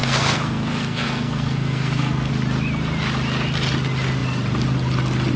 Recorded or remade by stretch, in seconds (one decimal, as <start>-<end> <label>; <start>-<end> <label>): 0.0-2.3 remade; 2.3-5.4 recorded